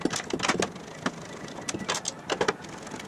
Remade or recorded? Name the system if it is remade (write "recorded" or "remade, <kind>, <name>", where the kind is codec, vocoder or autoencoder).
recorded